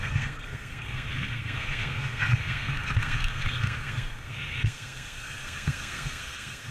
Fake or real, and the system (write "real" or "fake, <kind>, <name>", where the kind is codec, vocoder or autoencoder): fake, codec, SNAC